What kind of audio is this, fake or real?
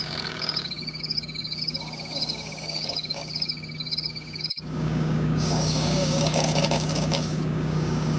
fake